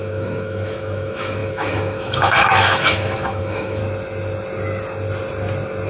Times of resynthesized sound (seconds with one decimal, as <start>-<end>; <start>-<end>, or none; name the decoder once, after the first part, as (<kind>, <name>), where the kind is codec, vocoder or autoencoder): 0.0-3.8 (autoencoder, DAC-VAE)